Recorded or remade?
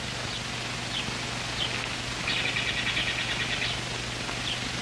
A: recorded